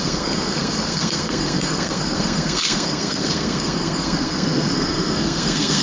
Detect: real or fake fake